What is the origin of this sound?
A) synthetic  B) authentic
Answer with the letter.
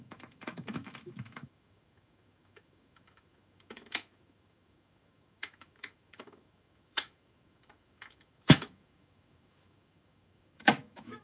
A